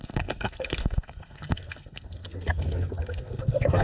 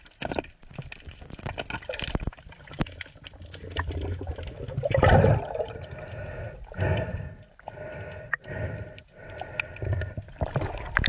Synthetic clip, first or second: first